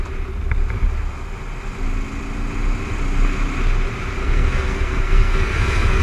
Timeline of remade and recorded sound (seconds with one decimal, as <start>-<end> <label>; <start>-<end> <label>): 0.0-4.2 recorded; 4.2-6.0 remade